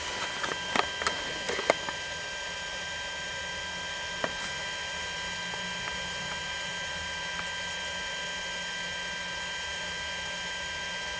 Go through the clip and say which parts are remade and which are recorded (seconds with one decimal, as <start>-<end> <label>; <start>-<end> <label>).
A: 0.0-11.2 recorded